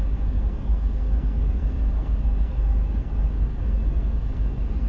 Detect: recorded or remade remade